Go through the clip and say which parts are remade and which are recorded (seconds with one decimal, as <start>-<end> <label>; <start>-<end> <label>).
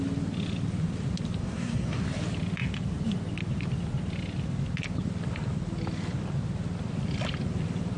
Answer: 0.0-1.4 recorded; 1.4-2.0 remade; 2.0-8.0 recorded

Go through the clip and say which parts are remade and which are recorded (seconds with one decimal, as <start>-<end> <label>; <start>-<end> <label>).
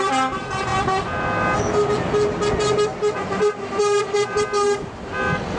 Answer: 0.0-2.9 recorded; 2.9-4.3 remade; 4.3-5.6 recorded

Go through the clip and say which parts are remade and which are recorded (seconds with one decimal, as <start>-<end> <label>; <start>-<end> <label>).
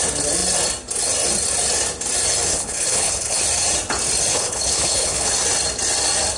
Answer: 0.0-2.5 recorded; 2.5-3.4 remade; 3.4-4.3 recorded; 4.3-5.3 remade; 5.3-6.4 recorded